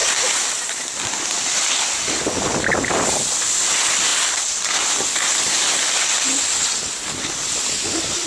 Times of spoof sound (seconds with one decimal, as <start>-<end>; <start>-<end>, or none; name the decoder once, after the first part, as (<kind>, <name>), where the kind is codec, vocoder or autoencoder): none